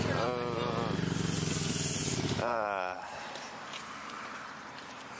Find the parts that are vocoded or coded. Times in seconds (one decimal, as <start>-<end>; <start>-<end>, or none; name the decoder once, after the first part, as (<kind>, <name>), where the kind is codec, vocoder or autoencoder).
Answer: 2.0-5.2 (vocoder, BigVGAN v2)